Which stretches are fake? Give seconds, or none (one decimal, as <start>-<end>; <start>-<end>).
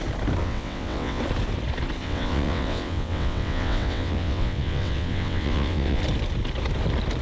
0.4-1.2; 2.0-6.0